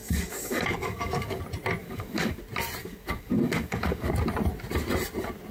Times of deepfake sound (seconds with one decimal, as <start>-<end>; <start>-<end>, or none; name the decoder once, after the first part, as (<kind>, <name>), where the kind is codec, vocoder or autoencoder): 0.0-1.4 (codec, DAC); 1.8-2.4; 2.8-4.1

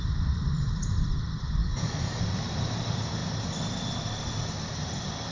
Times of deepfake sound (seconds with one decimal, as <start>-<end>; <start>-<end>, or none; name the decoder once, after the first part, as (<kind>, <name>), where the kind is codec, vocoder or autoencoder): 1.6-2.2 (codec, DAC)

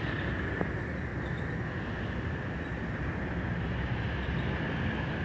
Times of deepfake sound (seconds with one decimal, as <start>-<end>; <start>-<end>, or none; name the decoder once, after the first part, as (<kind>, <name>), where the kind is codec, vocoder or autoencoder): none

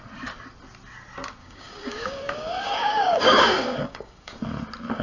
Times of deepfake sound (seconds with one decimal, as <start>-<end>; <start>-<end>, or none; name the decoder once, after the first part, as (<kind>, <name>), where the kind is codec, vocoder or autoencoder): 1.4-4.4 (codec, DAC)

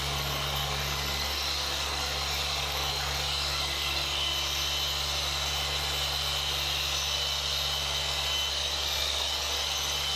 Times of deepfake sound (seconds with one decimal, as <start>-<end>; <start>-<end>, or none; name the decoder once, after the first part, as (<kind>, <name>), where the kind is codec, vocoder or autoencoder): 0.0-4.3 (codec, DAC); 8.5-10.2

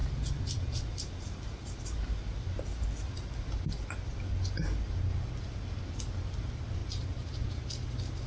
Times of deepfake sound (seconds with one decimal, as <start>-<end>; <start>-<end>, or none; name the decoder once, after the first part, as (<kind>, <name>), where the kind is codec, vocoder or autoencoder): none

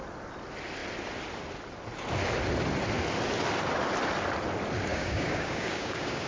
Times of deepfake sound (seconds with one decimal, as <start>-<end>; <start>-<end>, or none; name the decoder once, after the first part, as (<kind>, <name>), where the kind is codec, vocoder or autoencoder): 4.9-6.3 (codec, DAC)

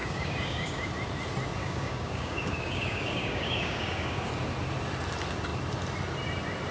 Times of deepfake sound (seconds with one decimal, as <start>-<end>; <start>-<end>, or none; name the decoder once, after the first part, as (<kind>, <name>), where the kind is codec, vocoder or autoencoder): 0.0-0.9 (codec, DAC); 1.6-4.3